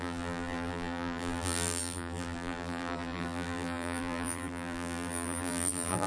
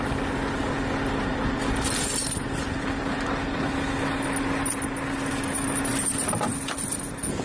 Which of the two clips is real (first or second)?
second